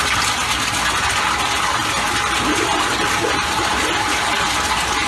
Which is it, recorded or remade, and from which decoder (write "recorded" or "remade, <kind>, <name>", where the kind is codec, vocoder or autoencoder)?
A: recorded